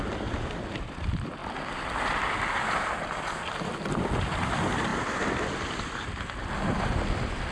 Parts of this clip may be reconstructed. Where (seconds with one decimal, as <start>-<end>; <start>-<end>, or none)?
none